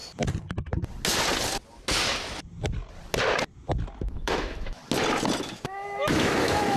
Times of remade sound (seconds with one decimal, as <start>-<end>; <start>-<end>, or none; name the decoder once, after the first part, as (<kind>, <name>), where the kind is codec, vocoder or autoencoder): 4.1-4.8 (autoencoder, DAC-VAE); 5.4-6.8